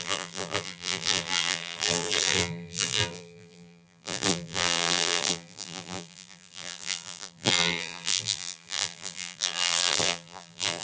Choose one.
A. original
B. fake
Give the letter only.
B